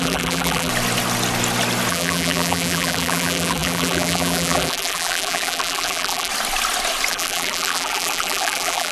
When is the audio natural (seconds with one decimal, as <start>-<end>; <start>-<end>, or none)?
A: 0.7-1.9; 6.3-7.1